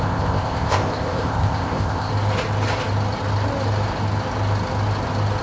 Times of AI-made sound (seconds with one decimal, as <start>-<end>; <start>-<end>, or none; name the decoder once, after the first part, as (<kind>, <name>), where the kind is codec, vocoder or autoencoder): 0.0-2.1 (codec, ZipCodec)